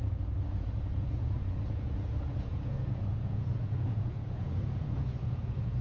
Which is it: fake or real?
fake